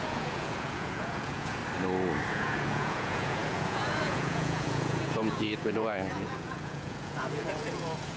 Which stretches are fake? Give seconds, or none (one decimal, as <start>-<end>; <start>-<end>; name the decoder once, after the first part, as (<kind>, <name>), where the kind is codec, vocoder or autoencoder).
0.0-1.6 (vocoder, Vocos); 2.3-8.2